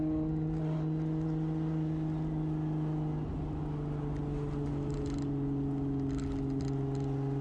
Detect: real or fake real